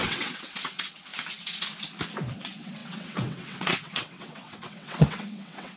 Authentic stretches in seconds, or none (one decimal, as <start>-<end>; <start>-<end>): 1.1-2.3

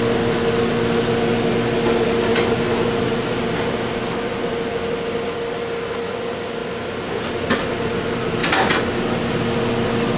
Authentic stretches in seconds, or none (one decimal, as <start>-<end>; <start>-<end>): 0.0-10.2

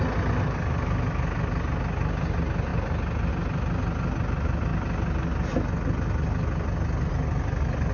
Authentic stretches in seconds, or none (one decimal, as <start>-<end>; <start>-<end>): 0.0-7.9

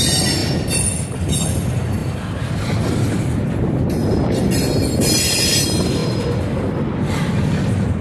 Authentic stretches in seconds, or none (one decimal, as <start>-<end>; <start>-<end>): 0.0-8.0

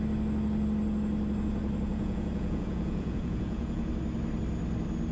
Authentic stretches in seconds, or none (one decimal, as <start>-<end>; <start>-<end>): 0.0-1.9; 3.9-5.1

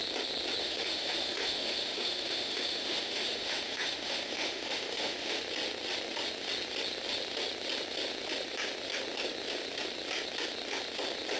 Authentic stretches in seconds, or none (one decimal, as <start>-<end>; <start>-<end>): 0.0-0.6; 5.4-11.4

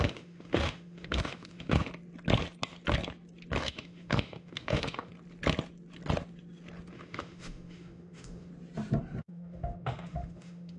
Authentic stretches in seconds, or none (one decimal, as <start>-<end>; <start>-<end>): 1.9-3.6; 5.1-6.9; 8.5-9.2